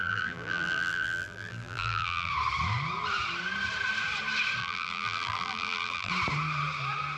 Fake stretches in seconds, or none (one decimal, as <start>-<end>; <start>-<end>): 0.0-2.3; 4.6-6.1